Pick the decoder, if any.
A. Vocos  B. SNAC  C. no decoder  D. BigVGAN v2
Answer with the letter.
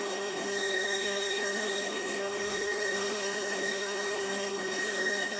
B